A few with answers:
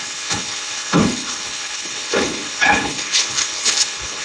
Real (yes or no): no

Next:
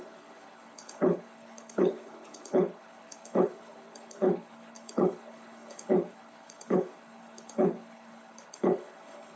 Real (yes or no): no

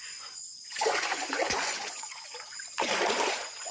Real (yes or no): no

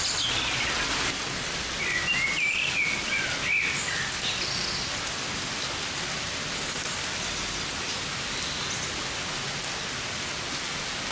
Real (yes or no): yes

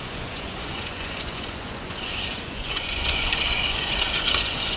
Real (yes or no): no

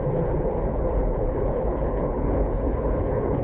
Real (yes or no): no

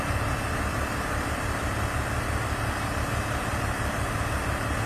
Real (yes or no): yes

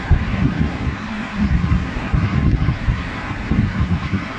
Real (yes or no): no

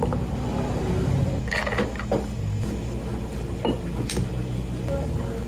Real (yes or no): yes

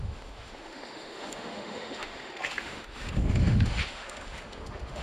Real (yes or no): no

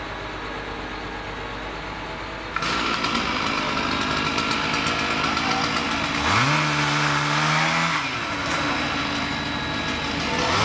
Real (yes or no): yes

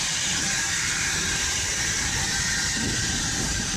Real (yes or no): no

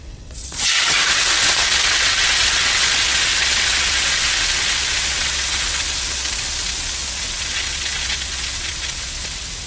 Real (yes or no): no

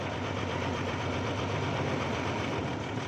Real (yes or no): no